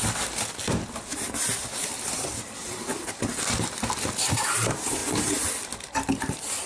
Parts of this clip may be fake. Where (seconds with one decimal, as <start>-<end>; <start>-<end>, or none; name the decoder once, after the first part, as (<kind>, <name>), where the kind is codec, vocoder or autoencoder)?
none